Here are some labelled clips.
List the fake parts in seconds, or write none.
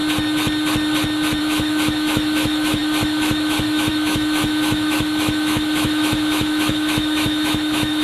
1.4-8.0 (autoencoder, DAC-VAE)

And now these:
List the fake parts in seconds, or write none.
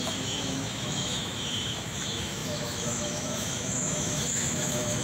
0.0-5.0 (autoencoder, DAC-VAE)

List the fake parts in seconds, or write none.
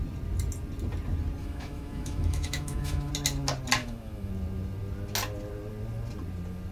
1.4-3.1 (autoencoder, DAC-VAE); 3.8-4.3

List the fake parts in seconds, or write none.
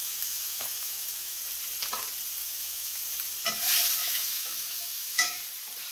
0.0-1.4 (autoencoder, DAC-VAE); 2.4-3.0; 4.0-5.4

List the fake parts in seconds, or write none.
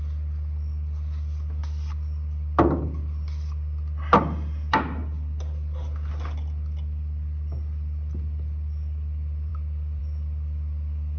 none